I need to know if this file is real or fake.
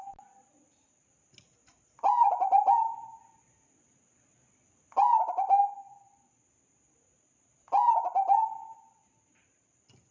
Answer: real